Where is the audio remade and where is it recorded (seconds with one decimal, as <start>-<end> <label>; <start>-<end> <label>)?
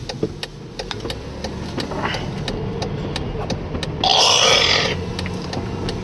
0.0-6.0 recorded